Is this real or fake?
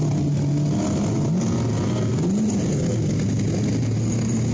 real